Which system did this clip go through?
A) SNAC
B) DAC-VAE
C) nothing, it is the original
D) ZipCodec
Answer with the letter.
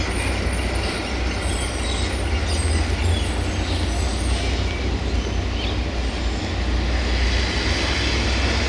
C